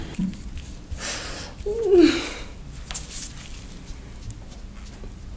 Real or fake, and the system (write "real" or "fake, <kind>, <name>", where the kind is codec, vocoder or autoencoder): real